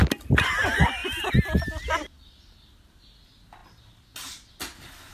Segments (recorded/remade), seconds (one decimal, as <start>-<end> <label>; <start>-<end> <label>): 0.0-5.1 recorded